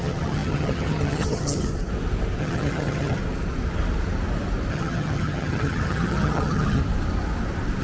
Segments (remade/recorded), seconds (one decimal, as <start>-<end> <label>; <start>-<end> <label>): 0.0-1.7 remade; 1.7-2.4 recorded; 2.4-3.2 remade; 3.2-4.7 recorded; 4.7-6.8 remade; 6.8-7.8 recorded